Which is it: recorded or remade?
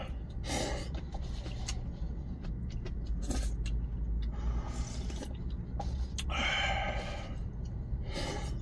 recorded